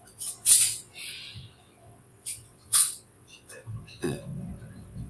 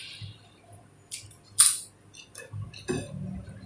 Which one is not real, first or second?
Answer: first